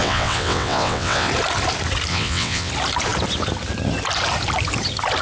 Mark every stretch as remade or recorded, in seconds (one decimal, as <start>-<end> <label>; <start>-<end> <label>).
0.0-1.3 remade; 1.3-2.1 recorded; 2.1-2.7 remade; 2.7-5.2 recorded